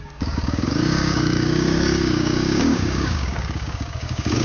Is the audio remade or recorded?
remade